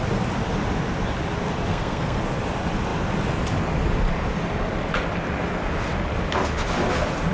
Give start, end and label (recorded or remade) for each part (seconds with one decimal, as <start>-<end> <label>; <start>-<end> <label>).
0.0-1.7 recorded; 1.7-2.2 remade; 2.2-7.3 recorded